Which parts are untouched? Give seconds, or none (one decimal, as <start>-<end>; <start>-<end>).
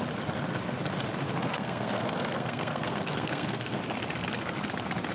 0.0-1.4; 3.8-5.1